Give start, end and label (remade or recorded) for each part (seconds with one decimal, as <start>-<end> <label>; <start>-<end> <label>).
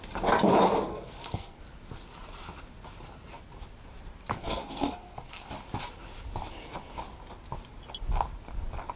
0.0-0.9 recorded; 0.9-1.6 remade; 1.6-4.3 recorded; 4.3-5.5 remade; 5.5-9.0 recorded